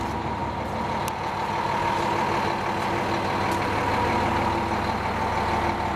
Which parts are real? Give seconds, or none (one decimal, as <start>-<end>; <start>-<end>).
0.0-6.0